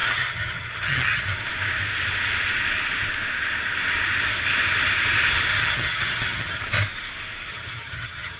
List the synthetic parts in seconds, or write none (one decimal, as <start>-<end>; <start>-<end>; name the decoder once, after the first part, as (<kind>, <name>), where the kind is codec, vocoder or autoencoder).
0.0-1.2 (vocoder, HiFi-GAN); 5.6-6.6; 7.5-8.4